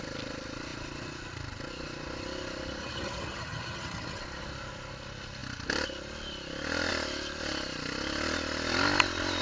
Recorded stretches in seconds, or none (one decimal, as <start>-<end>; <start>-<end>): 0.0-2.8; 4.2-9.4